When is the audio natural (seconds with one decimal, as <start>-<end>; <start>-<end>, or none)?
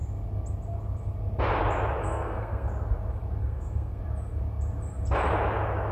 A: 0.0-2.0; 2.7-3.4; 4.0-5.9